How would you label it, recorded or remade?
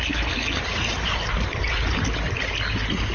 recorded